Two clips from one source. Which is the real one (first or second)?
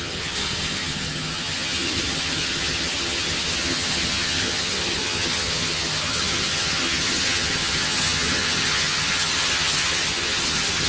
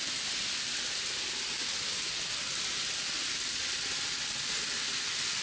second